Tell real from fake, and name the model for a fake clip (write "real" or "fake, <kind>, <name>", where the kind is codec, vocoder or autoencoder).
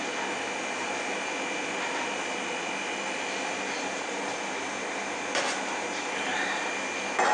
real